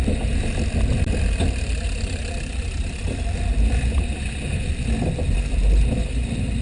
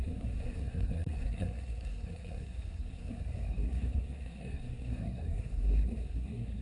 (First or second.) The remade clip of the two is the second